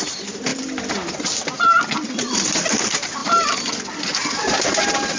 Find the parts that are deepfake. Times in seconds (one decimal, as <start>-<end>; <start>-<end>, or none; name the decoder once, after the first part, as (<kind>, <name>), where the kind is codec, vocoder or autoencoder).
0.5-1.1 (vocoder, BigVGAN v2); 3.2-3.7